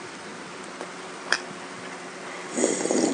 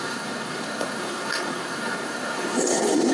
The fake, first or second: second